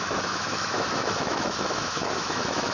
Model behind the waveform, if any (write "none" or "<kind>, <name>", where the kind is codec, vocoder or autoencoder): autoencoder, DAC-VAE